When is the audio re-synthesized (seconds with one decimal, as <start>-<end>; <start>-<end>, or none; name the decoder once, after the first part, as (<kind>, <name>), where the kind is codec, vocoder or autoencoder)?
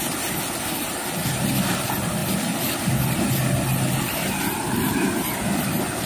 none